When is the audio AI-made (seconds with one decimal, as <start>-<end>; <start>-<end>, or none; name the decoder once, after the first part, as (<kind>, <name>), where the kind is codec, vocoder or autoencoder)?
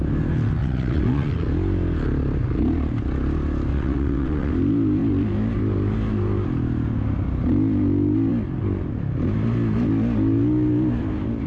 0.6-1.3 (vocoder, WaveNeXt); 3.7-4.5